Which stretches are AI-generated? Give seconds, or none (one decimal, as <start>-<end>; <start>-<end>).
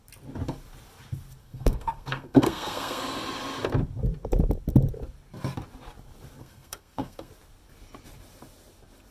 1.4-3.0; 6.4-7.3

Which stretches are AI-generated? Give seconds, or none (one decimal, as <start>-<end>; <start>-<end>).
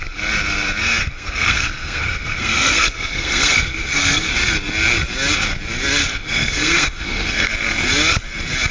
1.0-4.3; 6.0-7.5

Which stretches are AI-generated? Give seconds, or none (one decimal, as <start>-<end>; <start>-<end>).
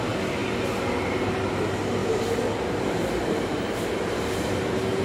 2.0-5.0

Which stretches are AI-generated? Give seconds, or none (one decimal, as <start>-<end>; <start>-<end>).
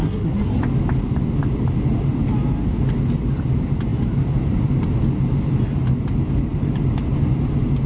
0.0-0.6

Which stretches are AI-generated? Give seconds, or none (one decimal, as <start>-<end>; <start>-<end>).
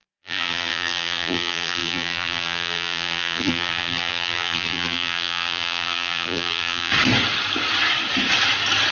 0.0-6.9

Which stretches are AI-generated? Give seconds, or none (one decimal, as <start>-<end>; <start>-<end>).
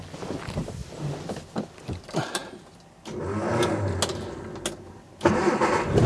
none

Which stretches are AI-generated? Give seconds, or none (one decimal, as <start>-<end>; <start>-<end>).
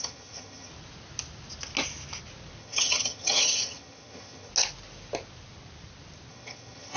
0.0-0.7; 2.6-4.5; 6.3-7.0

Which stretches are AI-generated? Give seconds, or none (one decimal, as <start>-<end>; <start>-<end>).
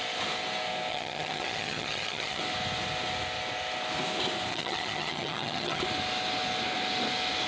0.9-2.4; 4.5-5.8